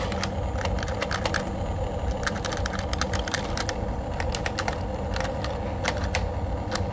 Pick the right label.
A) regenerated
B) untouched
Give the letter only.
B